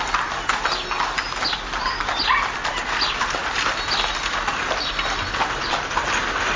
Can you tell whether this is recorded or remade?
recorded